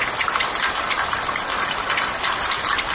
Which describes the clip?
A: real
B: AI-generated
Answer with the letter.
A